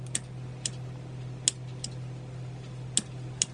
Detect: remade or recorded recorded